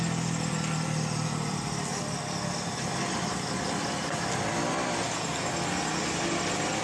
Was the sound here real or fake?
real